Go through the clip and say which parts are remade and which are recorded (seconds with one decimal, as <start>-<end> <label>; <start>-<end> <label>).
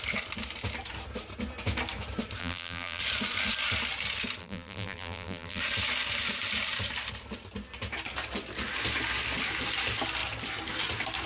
0.0-2.4 recorded; 2.4-3.0 remade; 3.0-4.4 recorded; 4.4-5.6 remade; 5.6-11.3 recorded